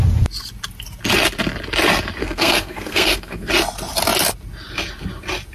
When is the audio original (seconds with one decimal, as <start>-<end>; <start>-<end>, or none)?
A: 0.0-2.2; 3.5-5.5